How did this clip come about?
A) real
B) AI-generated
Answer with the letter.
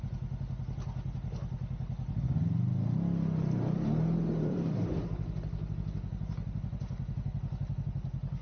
A